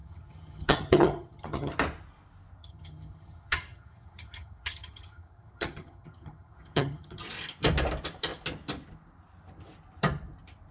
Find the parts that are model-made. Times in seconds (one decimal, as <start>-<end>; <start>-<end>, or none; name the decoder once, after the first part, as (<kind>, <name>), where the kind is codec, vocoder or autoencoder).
0.0-1.7 (vocoder, HiFi-GAN); 2.6-7.3